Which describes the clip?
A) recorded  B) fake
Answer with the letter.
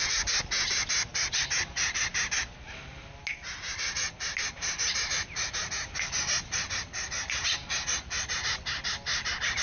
A